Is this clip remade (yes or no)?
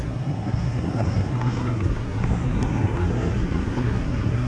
yes